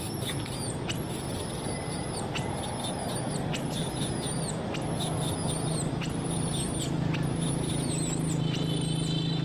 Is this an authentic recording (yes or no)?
yes